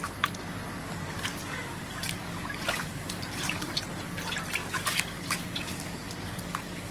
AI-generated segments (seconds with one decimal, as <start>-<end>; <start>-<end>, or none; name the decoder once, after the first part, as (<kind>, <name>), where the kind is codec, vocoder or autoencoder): 0.8-3.8 (codec, DAC); 4.6-6.9